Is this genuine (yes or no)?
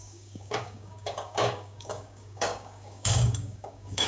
no